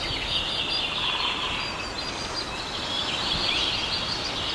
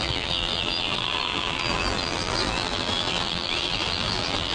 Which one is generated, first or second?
second